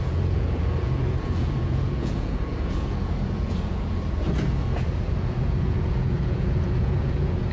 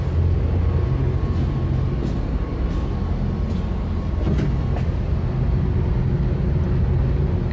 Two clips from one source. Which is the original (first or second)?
second